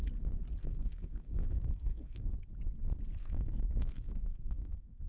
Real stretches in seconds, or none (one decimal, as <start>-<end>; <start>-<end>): 0.0-0.6; 2.3-3.2